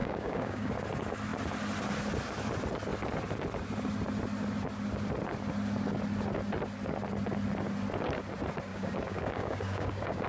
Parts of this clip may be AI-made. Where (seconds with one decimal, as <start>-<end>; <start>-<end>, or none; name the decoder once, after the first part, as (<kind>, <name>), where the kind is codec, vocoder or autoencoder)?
0.0-0.7 (codec, DAC); 8.7-10.3